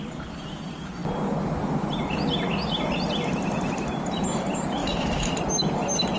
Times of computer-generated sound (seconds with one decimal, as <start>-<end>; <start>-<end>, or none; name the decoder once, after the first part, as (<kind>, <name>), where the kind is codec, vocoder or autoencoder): 4.8-5.3 (autoencoder, DAC-VAE)